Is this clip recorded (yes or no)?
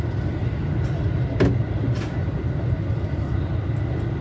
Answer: yes